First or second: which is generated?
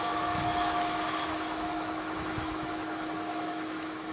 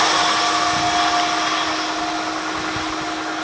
first